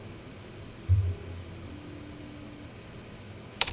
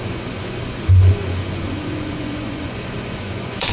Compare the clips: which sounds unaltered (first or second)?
first